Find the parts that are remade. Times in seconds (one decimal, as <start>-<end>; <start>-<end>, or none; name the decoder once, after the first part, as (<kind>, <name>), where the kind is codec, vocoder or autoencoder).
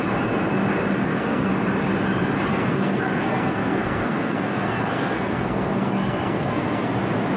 1.0-1.5 (codec, SNAC); 2.5-6.9